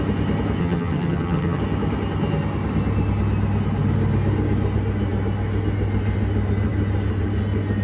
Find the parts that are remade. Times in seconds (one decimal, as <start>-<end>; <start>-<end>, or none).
0.6-1.6